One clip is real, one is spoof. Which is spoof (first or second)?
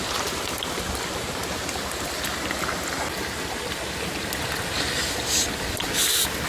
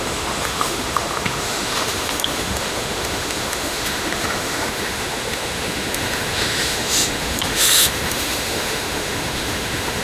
second